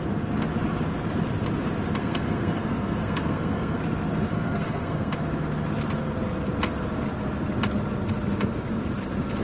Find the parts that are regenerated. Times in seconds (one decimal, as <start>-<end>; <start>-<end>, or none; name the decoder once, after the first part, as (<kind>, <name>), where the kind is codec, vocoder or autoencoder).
2.0-3.8 (codec, SNAC); 4.3-5.1